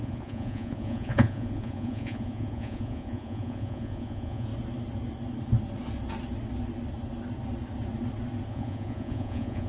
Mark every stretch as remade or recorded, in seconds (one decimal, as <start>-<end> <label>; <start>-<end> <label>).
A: 0.0-4.5 remade; 4.5-8.5 recorded; 8.5-9.7 remade